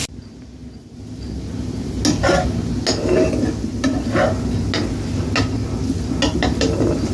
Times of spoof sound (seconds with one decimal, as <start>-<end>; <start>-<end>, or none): none